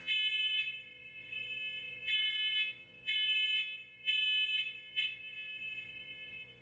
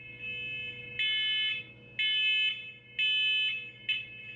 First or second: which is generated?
first